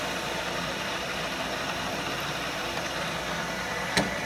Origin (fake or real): real